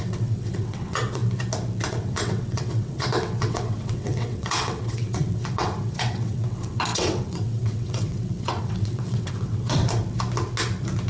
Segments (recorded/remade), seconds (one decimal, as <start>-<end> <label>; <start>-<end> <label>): 0.0-1.2 remade; 1.2-1.9 recorded; 1.9-9.8 remade; 9.8-11.1 recorded